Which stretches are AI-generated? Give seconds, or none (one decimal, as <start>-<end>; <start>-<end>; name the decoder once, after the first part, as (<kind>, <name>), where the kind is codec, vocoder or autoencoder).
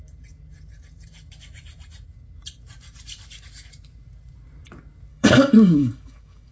5.1-6.5 (codec, DAC)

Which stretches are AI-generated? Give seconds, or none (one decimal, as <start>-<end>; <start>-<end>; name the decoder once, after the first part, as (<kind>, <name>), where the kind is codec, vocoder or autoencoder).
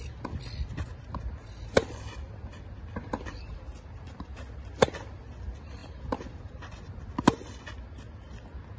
5.8-6.6 (vocoder, BigVGAN v2)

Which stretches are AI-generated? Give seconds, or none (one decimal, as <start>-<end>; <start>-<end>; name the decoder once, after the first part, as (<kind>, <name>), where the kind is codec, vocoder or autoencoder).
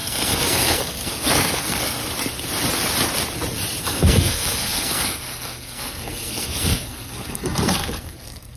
0.0-2.0 (codec, SNAC); 3.8-8.6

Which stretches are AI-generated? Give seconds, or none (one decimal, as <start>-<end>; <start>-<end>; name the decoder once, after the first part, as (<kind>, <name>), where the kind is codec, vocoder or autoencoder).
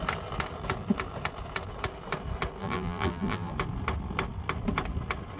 2.6-3.5 (vocoder, BigVGAN v2)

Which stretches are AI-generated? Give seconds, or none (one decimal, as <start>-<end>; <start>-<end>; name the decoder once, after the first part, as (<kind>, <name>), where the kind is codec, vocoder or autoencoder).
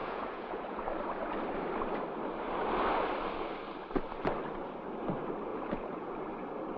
0.0-0.8 (vocoder, Vocos); 5.5-6.1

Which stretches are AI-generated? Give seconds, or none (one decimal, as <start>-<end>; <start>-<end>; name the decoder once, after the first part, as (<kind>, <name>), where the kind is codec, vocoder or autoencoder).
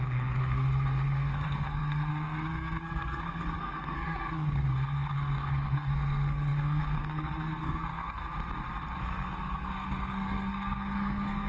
0.0-8.2 (codec, SNAC); 9.0-11.5